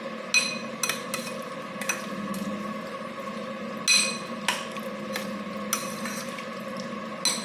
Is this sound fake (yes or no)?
no